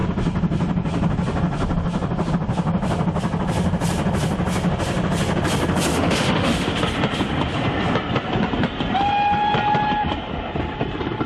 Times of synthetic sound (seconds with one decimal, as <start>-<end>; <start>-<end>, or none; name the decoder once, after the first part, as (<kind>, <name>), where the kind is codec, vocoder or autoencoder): 5.9-6.7 (autoencoder, DAC-VAE)